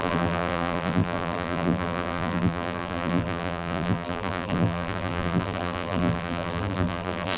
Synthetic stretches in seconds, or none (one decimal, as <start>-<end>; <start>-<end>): 0.0-7.4